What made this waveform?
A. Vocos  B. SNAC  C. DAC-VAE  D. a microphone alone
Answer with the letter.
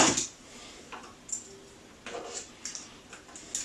D